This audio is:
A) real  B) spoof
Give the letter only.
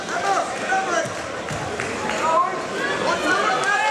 A